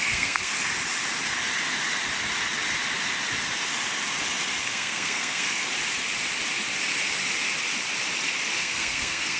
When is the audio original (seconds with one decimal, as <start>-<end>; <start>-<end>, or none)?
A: 0.5-4.6; 5.6-8.6